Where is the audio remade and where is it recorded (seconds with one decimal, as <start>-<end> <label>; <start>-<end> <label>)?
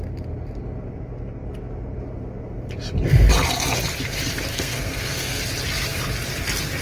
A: 0.0-4.5 recorded; 4.5-5.4 remade; 5.4-6.8 recorded